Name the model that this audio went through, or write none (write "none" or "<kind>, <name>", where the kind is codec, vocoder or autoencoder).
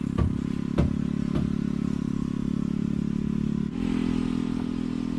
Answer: none